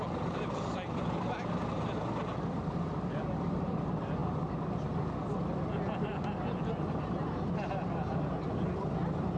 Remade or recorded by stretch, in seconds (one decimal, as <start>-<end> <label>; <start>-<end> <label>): 0.0-9.4 recorded